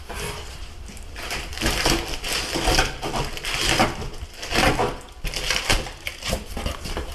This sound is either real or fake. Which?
real